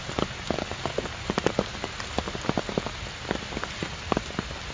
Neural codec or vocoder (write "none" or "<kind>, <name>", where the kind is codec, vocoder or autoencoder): none